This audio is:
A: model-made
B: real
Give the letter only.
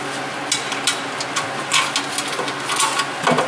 B